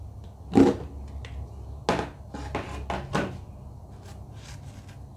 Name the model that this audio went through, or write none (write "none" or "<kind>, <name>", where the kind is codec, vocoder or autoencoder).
none